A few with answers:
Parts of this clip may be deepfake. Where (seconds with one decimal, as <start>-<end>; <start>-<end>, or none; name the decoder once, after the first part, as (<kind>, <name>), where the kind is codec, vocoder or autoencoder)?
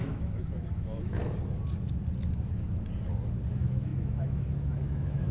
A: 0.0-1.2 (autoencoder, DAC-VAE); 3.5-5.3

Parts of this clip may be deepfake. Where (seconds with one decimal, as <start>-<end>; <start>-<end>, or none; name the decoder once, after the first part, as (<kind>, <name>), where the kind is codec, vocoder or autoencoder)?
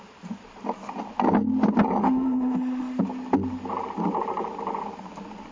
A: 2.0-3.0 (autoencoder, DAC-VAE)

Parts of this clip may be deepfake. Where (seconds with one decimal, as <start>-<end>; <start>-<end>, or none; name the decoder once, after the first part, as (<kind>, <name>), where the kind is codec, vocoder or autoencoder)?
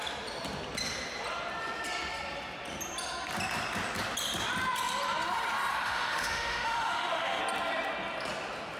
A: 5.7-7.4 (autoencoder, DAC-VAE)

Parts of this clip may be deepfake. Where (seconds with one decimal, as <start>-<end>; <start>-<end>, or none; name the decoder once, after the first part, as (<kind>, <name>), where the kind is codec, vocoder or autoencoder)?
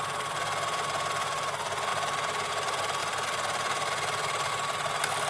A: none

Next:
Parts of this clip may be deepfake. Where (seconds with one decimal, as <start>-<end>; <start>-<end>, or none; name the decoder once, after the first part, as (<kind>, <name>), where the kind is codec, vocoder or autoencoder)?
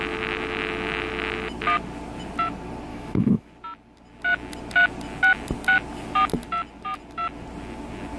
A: 2.9-3.5 (autoencoder, DAC-VAE)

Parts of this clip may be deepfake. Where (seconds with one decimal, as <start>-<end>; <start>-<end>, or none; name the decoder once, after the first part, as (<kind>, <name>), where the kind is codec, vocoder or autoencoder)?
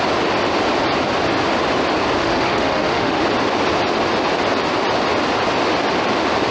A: 2.2-3.2 (autoencoder, DAC-VAE)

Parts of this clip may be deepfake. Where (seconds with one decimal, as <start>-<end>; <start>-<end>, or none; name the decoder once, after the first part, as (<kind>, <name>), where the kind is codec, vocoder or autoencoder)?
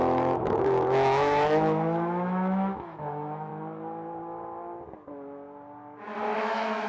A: 0.0-3.5 (autoencoder, DAC-VAE); 6.4-6.9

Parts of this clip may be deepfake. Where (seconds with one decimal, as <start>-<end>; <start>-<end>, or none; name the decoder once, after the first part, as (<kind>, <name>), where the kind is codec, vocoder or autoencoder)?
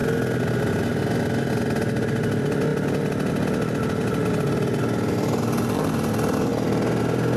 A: none